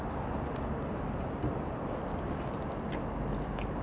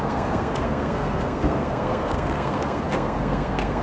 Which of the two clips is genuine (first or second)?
first